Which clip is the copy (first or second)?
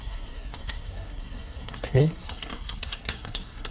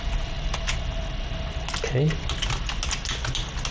first